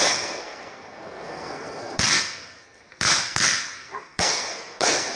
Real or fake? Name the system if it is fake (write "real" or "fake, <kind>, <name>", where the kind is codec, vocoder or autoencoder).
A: fake, codec, SNAC